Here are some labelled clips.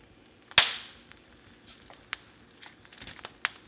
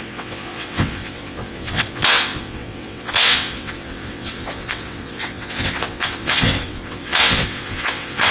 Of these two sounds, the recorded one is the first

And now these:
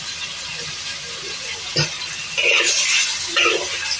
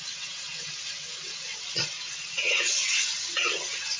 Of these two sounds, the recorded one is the first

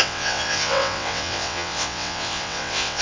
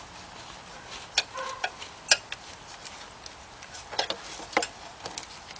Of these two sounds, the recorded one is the second